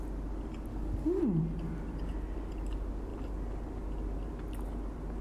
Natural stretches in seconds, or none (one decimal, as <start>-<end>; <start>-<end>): 0.0-0.7; 1.2-5.2